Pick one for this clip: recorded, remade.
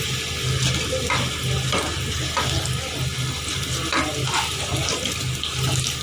recorded